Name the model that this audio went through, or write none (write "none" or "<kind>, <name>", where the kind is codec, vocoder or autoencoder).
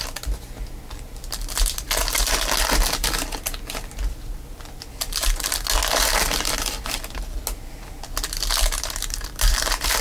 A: none